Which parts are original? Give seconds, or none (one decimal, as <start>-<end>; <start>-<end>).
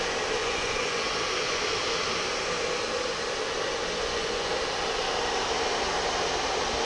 0.0-0.4; 1.6-4.0; 4.5-6.8